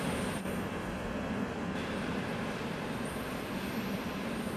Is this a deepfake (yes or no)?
no